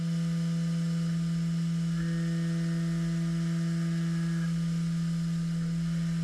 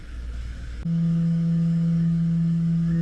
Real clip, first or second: first